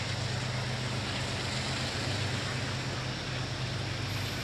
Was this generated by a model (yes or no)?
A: no